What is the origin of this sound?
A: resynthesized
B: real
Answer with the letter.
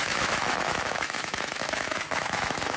A